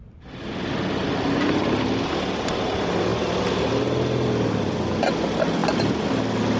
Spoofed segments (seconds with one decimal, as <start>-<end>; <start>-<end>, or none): none

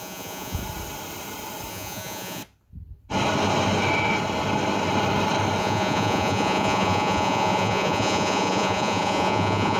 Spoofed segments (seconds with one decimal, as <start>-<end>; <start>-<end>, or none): 0.0-0.6; 1.7-2.4; 5.6-9.8

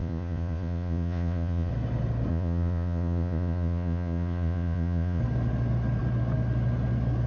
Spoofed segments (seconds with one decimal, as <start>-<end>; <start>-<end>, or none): 0.0-1.7; 2.3-5.2

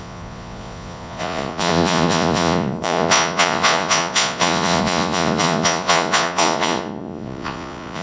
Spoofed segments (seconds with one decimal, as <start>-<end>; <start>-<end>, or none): 0.0-8.0

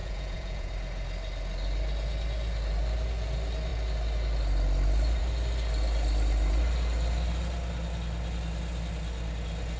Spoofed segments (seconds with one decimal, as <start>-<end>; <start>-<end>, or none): 0.0-0.7

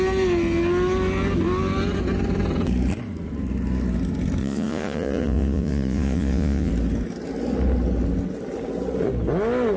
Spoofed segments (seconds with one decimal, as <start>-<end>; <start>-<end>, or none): 4.4-6.7

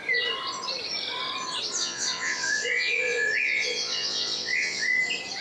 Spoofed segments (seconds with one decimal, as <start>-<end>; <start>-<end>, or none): 1.8-5.0